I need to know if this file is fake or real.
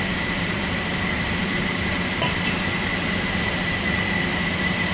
fake